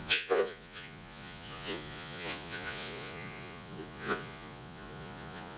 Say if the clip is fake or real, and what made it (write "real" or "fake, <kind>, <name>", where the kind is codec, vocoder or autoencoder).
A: fake, vocoder, Vocos